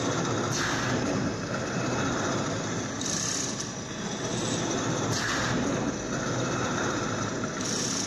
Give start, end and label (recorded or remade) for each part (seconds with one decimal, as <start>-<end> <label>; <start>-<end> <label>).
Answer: 0.0-8.1 recorded